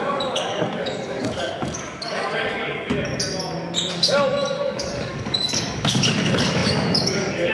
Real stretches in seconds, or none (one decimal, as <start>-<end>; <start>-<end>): 3.1-3.9